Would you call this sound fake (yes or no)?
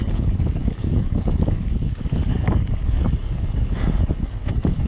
yes